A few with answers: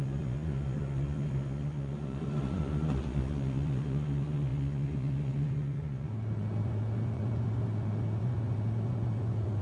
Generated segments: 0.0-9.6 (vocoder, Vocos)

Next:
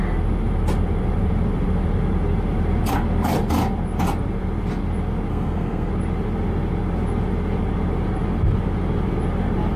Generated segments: 5.3-5.9 (codec, SNAC)

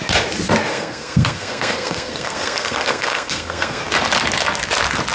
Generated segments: 0.7-3.8 (codec, SNAC)

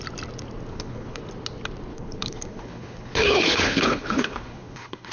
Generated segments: 0.7-1.2 (codec, HILCodec); 1.9-5.1

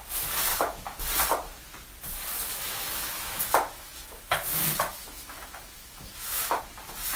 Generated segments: 0.5-1.0 (autoencoder, DAC-VAE); 2.5-4.6; 5.0-6.6

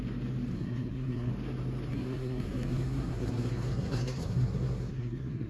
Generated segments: 0.5-1.3 (codec, SNAC); 1.9-5.5